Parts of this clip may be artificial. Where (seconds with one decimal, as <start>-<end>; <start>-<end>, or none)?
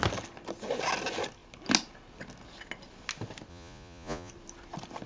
3.5-4.3